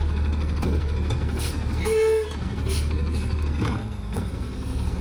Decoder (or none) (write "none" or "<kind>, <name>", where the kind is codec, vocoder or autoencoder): codec, SNAC